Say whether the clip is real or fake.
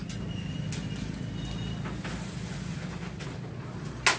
real